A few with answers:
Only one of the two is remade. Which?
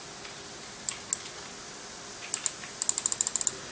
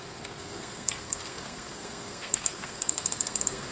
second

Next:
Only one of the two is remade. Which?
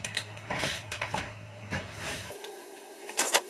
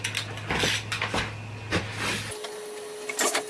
first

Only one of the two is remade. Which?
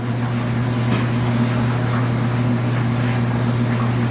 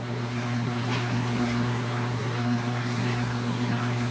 second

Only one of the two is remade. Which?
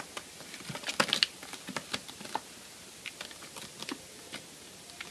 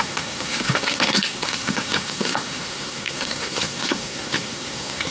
second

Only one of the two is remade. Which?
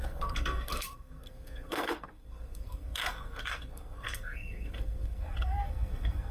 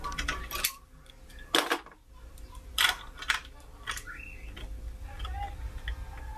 first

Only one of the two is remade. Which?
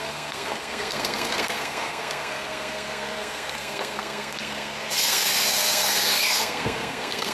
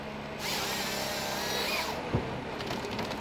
first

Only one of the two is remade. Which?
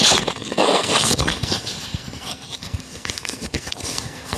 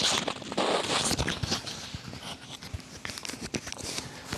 first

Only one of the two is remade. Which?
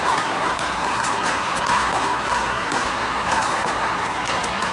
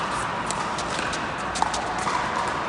first